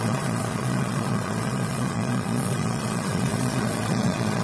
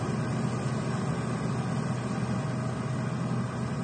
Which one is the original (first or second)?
second